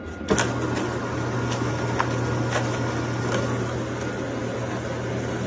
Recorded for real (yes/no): yes